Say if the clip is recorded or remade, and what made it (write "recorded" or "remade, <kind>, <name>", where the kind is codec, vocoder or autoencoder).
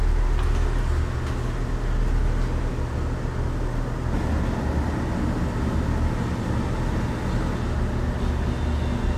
recorded